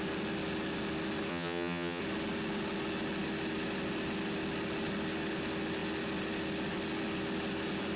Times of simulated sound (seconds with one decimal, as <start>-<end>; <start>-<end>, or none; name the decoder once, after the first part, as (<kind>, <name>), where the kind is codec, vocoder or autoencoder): 1.3-2.0 (vocoder, HiFi-GAN)